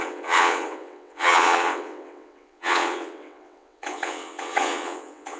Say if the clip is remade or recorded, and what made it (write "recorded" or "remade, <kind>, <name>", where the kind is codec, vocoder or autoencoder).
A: remade, vocoder, WaveNeXt